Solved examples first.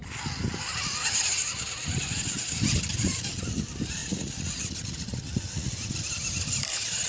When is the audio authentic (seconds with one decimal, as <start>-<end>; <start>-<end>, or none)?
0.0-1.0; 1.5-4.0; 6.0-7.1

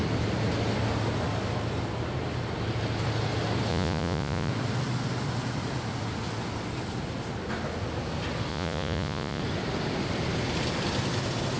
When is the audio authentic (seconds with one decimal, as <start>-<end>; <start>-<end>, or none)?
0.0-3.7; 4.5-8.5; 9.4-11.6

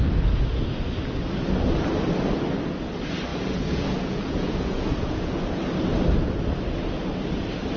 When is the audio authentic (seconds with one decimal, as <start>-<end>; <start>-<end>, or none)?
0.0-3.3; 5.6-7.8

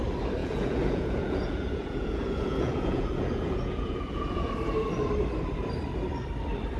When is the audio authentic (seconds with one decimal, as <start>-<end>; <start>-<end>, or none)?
0.0-0.4; 4.5-6.8

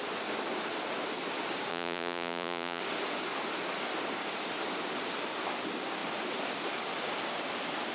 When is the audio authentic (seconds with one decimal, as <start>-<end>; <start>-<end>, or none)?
0.0-1.7; 2.8-7.9

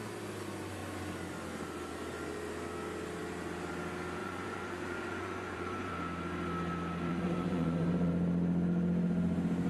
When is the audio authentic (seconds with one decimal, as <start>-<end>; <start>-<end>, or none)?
0.0-4.2; 5.9-7.1; 8.1-9.7